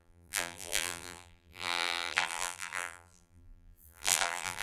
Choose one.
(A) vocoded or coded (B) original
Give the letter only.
A